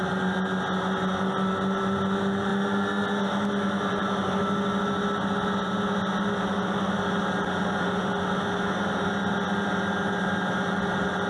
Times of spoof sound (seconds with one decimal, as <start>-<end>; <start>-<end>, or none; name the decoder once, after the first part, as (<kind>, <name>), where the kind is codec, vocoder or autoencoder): none